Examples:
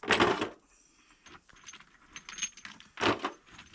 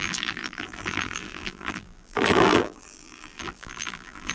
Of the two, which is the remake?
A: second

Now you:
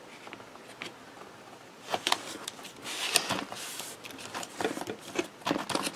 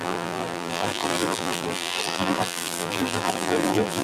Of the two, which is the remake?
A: second